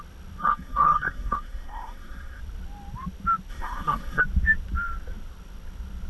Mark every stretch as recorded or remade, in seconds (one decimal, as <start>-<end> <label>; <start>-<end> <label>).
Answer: 0.0-0.4 recorded; 0.4-2.4 remade; 2.4-3.5 recorded; 3.5-4.2 remade; 4.2-6.1 recorded